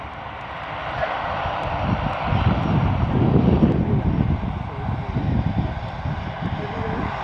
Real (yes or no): yes